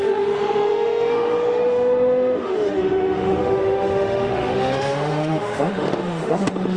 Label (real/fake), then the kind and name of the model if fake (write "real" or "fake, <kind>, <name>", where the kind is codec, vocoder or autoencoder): fake, autoencoder, DAC-VAE